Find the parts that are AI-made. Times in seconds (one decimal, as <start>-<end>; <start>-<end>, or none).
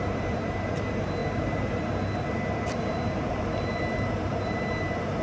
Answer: 0.0-5.2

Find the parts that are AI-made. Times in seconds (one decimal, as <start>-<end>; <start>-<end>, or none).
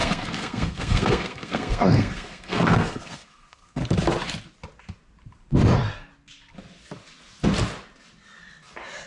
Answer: 0.0-3.8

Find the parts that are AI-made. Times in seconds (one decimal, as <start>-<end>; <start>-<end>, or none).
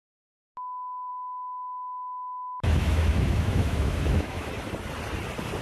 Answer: 1.1-4.5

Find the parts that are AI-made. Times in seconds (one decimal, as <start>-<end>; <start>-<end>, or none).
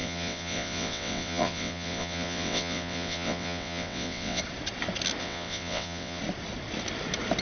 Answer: 0.0-4.4; 5.2-6.2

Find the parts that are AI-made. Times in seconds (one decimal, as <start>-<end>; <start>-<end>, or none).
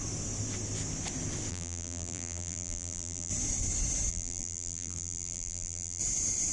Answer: 1.5-3.3; 4.1-6.0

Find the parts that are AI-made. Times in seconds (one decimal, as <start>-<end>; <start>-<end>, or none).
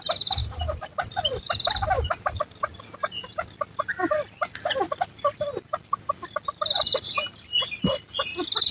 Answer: none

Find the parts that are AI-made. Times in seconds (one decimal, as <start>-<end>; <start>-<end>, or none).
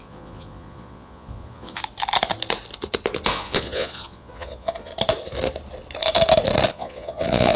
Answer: 0.0-1.8; 3.3-4.9; 6.7-7.6